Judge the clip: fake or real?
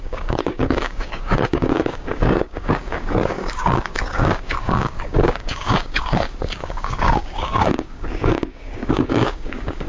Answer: fake